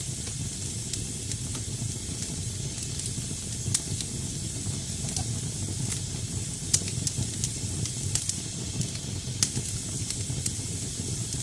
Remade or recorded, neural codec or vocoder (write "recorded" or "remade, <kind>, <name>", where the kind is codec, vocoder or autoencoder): recorded